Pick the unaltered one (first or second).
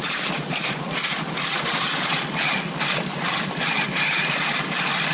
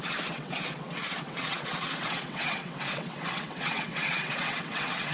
first